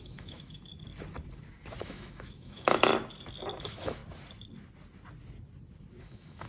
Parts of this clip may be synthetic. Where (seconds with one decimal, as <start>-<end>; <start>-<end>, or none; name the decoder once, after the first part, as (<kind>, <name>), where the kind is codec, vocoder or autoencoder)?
0.0-0.7 (autoencoder, DAC-VAE); 1.8-2.9; 3.6-4.0; 6.0-6.5